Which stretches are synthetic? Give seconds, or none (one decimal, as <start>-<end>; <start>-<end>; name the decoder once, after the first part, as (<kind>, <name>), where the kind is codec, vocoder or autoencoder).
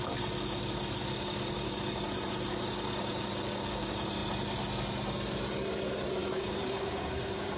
6.2-7.6 (codec, DAC)